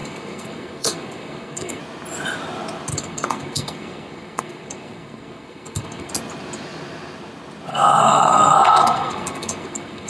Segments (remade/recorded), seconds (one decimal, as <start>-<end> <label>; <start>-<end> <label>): 0.0-1.8 remade; 1.8-2.9 recorded; 2.9-6.1 remade; 6.1-7.7 recorded; 7.7-10.1 remade